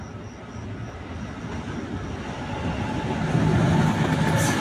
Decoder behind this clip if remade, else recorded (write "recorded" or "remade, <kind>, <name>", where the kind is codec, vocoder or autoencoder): recorded